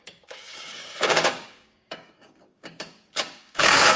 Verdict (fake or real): fake